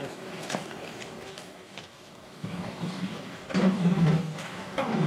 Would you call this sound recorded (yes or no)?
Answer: no